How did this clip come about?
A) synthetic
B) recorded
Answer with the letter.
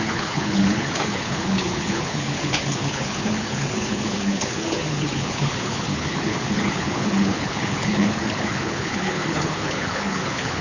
A